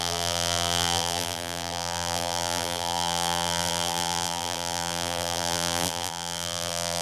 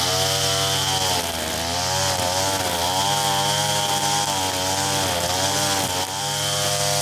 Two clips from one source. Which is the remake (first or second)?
first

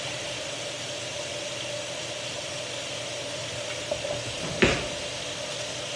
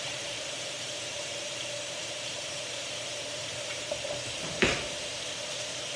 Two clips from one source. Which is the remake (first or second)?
second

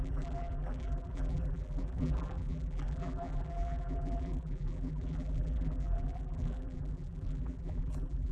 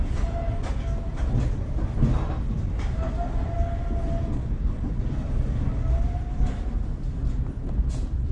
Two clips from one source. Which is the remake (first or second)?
first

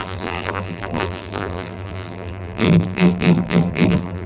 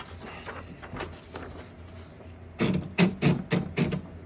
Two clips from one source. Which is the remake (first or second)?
first